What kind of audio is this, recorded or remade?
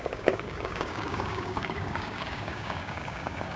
remade